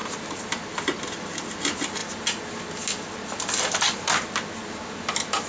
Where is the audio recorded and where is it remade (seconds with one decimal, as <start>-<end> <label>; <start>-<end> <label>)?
0.0-5.5 recorded